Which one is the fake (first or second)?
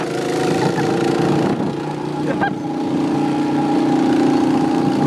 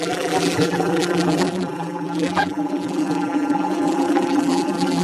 second